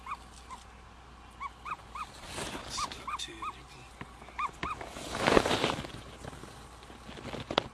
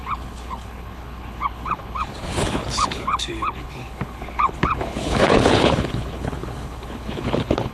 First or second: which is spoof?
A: second